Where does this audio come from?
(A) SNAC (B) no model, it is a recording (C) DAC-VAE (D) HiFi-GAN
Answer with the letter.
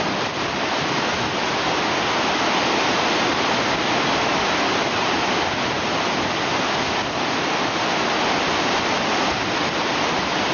B